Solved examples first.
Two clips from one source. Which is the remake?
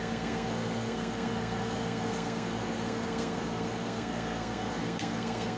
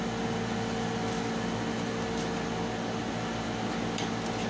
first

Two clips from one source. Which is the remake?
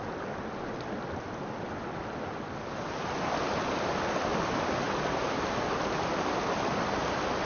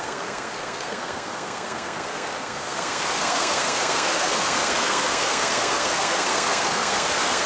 second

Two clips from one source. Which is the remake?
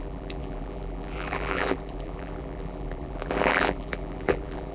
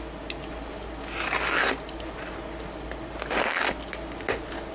first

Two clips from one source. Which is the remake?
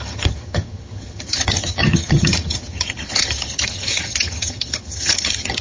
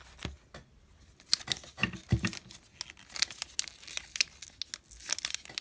first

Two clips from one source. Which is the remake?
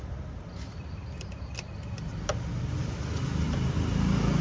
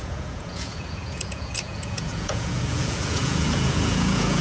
second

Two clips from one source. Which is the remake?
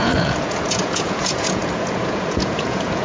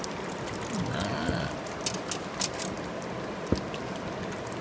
first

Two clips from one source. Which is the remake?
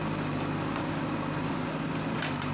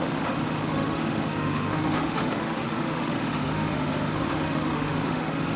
second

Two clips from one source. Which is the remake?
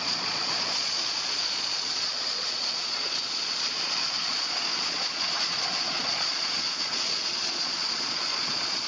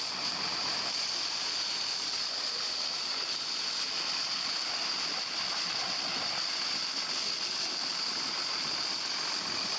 first